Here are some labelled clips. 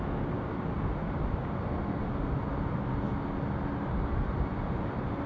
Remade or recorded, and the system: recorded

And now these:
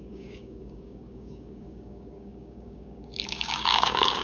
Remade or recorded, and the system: remade, codec, DAC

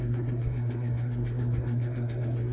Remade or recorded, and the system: remade, codec, SNAC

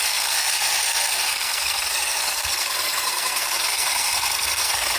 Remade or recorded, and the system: remade, codec, SNAC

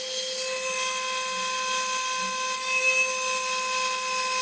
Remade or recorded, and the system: recorded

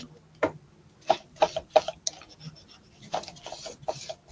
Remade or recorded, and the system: recorded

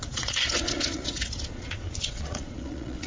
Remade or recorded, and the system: remade, vocoder, Vocos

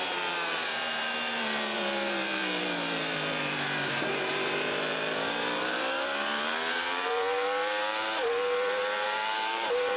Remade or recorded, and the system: remade, vocoder, BigVGAN v2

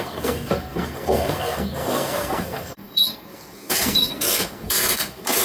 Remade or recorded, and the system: remade, codec, SNAC